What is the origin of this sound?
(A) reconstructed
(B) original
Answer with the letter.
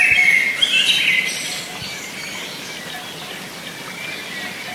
B